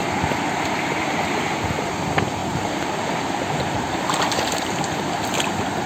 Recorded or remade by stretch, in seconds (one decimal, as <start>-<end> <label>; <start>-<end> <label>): 0.0-5.9 recorded